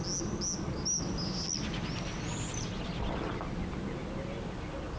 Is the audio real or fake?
real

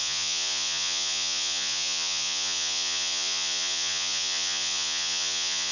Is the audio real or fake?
fake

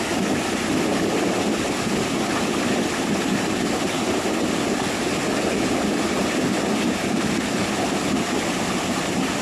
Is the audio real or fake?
real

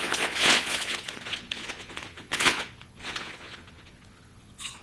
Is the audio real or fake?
fake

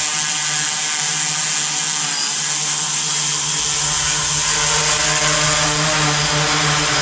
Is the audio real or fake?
real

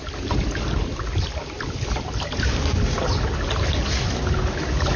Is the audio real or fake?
real